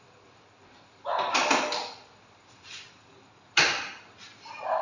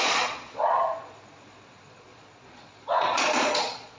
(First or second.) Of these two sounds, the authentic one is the first